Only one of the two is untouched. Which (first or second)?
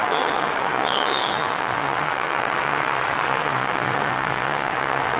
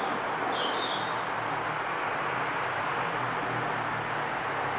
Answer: second